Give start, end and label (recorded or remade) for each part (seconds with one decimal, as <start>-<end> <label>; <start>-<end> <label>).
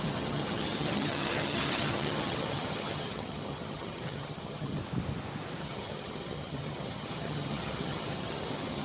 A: 0.0-4.8 remade; 4.8-5.6 recorded; 5.6-8.8 remade